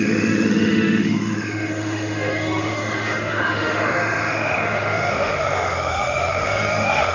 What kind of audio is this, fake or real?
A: fake